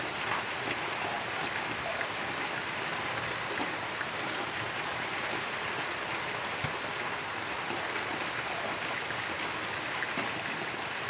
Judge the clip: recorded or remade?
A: recorded